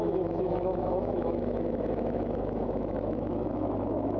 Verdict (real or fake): fake